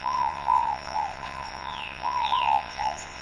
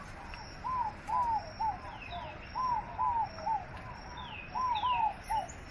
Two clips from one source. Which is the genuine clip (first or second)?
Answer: second